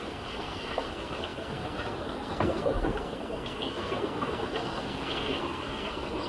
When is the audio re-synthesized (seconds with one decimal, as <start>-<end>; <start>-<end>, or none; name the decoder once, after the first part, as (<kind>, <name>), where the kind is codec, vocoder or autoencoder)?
0.0-6.3 (codec, SNAC)